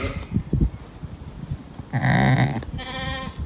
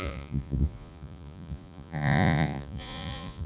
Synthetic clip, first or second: second